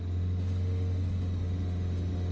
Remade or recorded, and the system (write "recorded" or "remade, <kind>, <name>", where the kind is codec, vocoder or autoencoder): recorded